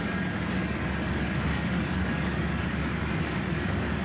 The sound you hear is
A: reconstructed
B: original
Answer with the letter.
A